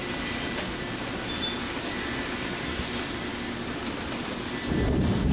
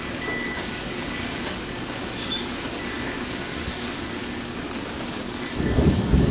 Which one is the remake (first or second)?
second